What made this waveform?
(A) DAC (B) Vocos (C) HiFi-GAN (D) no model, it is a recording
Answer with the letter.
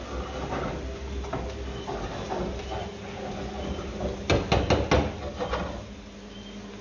D